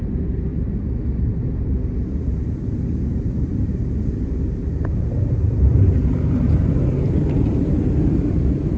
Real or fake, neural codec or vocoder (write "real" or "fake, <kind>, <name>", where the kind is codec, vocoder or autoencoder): fake, vocoder, BigVGAN v2